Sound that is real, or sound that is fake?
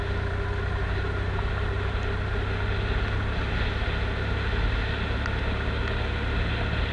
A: real